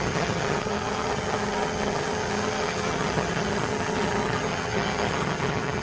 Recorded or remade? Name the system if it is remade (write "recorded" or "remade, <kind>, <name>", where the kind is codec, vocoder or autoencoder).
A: remade, vocoder, HiFi-GAN